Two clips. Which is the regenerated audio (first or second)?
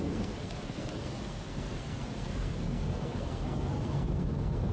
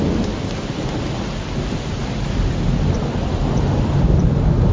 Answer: first